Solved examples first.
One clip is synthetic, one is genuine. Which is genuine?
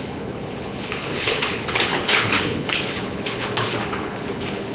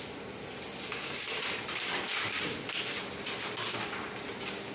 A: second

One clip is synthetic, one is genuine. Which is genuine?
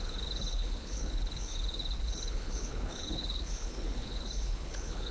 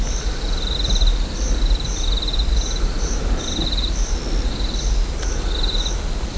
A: second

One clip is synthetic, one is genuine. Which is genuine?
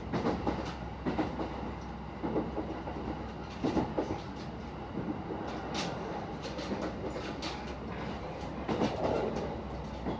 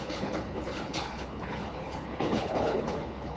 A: first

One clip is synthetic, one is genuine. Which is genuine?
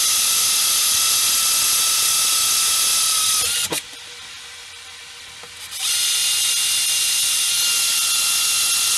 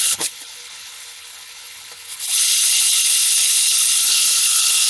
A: first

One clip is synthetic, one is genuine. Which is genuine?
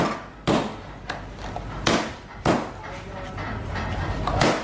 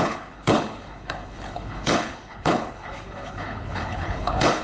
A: first